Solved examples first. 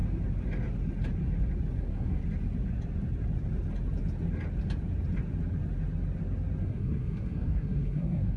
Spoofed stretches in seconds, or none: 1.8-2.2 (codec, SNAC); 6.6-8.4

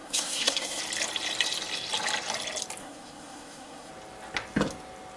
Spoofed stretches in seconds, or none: 0.0-0.8 (codec, SNAC); 2.8-3.9

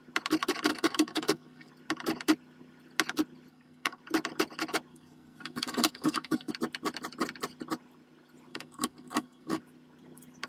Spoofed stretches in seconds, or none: 0.7-1.7 (codec, SNAC); 3.5-4.0; 4.9-6.5; 8.5-9.6

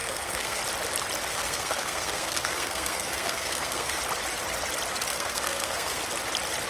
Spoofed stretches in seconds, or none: 0.0-0.6 (codec, SNAC); 1.3-4.0; 5.1-6.0

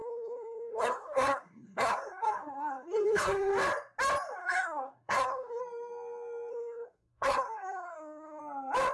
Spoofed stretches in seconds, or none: 0.0-3.5 (codec, SNAC); 4.4-5.6; 6.5-8.4

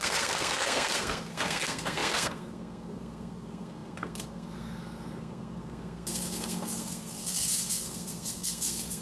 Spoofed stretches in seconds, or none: 0.0-9.0 (codec, SNAC)

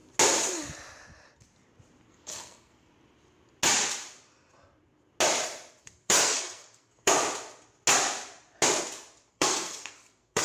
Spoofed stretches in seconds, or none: 2.1-2.9 (codec, SNAC); 5.7-7.1; 9.3-10.4

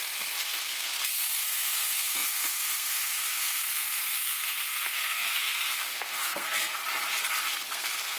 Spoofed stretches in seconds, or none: 0.0-6.8 (codec, SNAC); 7.4-8.2